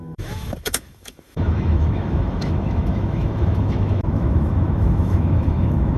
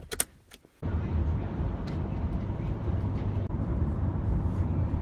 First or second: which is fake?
first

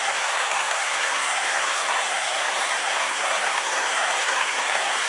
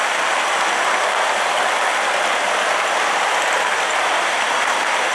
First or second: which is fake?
first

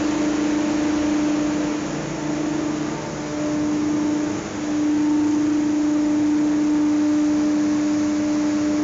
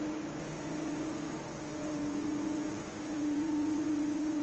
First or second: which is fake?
second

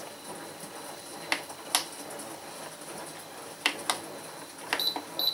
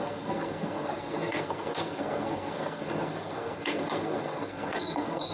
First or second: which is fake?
second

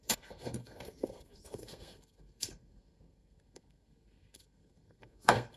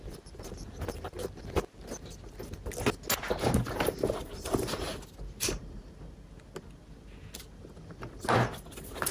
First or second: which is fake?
first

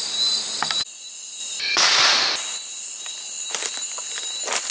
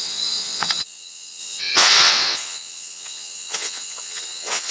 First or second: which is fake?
second